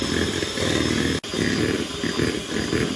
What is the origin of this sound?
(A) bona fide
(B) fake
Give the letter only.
A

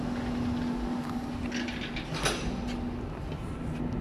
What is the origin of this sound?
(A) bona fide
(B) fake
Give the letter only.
A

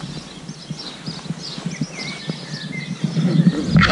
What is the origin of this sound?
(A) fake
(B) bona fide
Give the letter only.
B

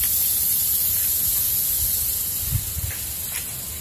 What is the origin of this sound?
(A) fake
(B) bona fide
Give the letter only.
B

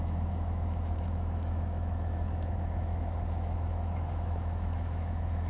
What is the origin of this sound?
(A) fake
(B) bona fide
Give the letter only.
A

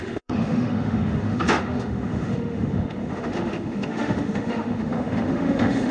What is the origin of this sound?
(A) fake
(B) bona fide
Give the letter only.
A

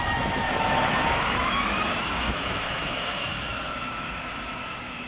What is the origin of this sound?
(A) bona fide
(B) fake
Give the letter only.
B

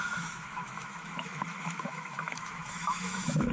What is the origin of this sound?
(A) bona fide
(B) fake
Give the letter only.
B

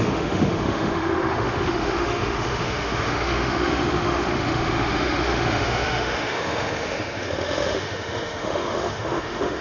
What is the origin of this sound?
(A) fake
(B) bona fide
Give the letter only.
A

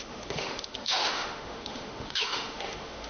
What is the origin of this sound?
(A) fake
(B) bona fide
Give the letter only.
A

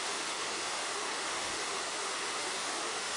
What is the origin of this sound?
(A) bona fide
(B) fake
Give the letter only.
B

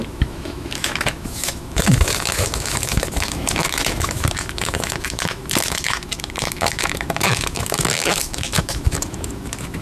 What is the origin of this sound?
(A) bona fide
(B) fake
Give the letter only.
B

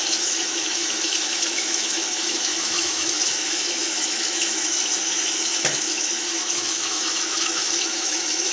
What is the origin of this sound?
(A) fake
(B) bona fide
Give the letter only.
A